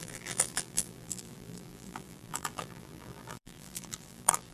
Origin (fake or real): fake